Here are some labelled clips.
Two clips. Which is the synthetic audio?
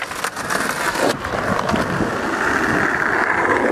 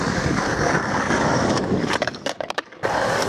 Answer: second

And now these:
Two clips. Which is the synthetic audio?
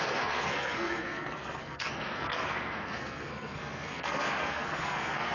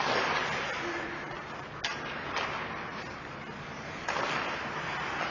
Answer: first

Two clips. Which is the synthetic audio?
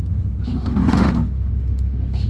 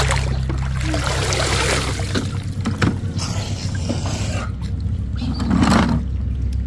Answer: first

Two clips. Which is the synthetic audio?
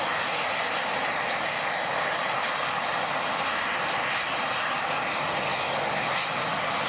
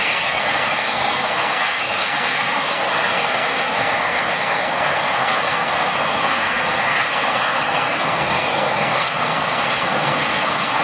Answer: second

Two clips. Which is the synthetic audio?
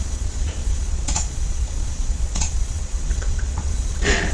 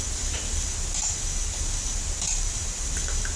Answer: first